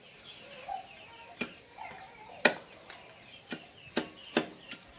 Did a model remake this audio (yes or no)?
no